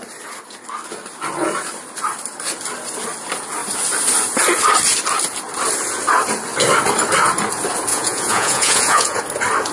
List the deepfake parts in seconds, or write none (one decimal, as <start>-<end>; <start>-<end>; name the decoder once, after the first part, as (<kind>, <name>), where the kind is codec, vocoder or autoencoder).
7.9-9.2 (vocoder, Vocos)